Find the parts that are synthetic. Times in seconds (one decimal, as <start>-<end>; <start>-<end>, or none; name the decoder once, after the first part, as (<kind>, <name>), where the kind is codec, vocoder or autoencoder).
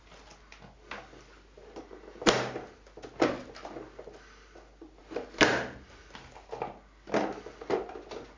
none